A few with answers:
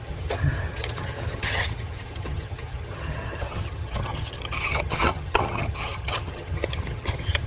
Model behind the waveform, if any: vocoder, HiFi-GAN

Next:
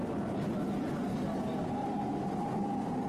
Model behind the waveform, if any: none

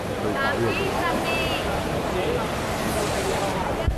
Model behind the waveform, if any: none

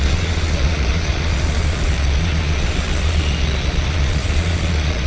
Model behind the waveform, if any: vocoder, Vocos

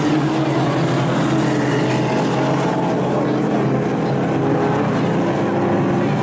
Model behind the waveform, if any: none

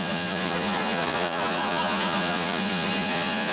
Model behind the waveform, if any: vocoder, Vocos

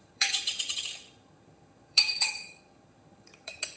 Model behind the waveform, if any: vocoder, HiFi-GAN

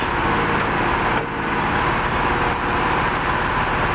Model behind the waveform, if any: none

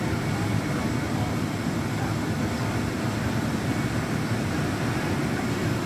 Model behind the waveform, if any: none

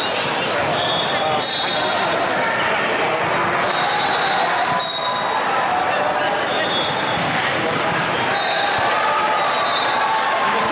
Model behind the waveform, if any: none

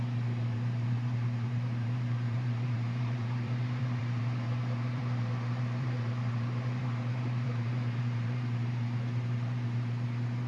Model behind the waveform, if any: vocoder, BigVGAN v2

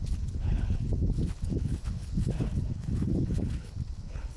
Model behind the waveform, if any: codec, HILCodec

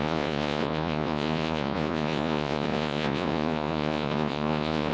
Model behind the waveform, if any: vocoder, Vocos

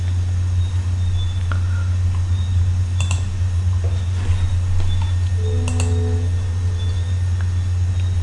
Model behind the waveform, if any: none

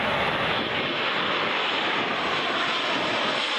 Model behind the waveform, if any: none